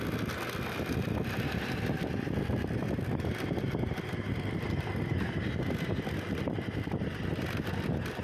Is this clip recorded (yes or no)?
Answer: yes